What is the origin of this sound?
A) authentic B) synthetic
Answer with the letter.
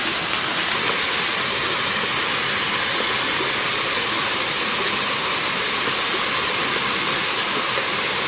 A